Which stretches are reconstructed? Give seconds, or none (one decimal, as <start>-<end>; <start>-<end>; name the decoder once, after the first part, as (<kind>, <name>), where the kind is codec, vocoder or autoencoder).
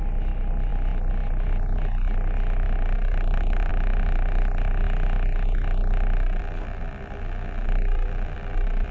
none